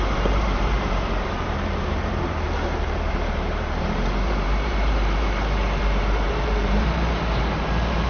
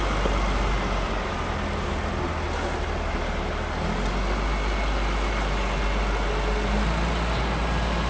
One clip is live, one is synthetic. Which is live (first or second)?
second